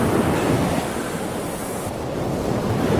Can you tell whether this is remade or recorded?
recorded